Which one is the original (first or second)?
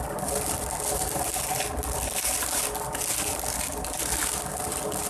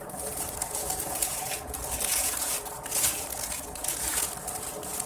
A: first